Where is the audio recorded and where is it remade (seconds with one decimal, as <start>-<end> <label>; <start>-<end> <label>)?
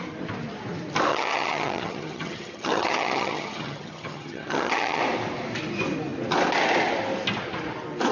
0.0-1.1 recorded; 1.1-5.0 remade; 5.0-8.1 recorded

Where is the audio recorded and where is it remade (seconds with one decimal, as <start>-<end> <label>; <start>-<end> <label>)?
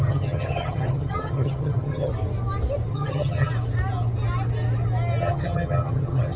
0.0-2.1 remade; 2.1-2.9 recorded; 2.9-3.5 remade; 3.5-5.2 recorded; 5.2-6.4 remade